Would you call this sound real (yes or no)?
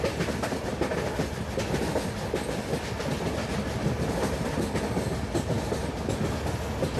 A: yes